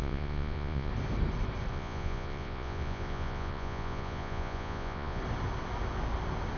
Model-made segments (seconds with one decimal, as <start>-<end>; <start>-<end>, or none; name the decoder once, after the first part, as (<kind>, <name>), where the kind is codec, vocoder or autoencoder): 0.0-0.9 (vocoder, Vocos); 1.7-5.2